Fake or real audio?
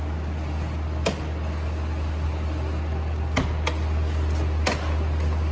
real